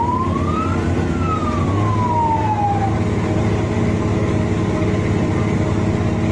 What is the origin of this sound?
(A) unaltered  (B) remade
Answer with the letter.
A